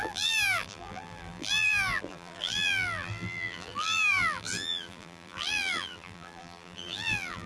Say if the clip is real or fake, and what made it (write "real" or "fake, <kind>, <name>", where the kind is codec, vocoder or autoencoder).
fake, vocoder, BigVGAN v2